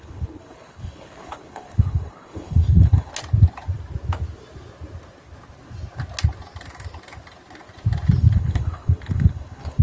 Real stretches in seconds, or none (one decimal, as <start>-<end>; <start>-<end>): 3.1-8.2